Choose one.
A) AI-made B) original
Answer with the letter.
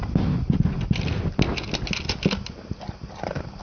B